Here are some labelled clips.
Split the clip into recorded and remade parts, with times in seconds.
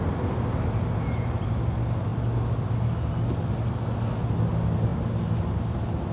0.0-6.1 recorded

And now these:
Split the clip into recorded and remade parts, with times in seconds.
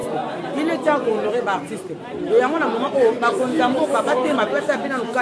0.0-3.5 recorded; 3.5-5.2 remade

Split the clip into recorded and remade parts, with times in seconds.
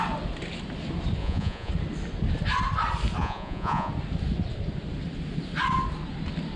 0.0-1.2 recorded; 1.2-1.7 remade; 1.7-3.2 recorded; 3.2-3.9 remade; 3.9-6.6 recorded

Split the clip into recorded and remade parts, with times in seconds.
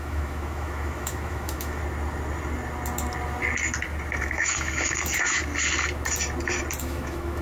0.0-1.8 remade; 1.8-4.2 recorded; 4.2-5.4 remade; 5.4-6.8 recorded; 6.8-7.4 remade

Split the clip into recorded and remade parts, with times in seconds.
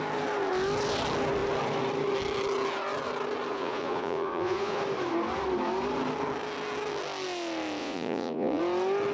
0.0-3.5 recorded; 3.5-4.8 remade; 4.8-7.8 recorded; 7.8-8.6 remade; 8.6-9.1 recorded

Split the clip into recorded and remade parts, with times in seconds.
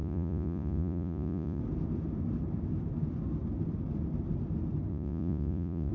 0.0-1.6 remade; 1.6-4.9 recorded; 4.9-5.9 remade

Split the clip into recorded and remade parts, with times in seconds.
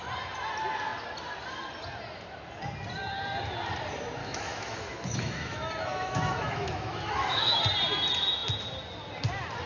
0.0-4.2 recorded; 4.2-7.6 remade; 7.6-9.7 recorded